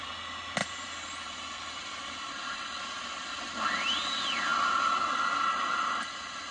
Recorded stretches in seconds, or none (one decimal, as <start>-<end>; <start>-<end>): 0.0-0.6; 3.6-6.5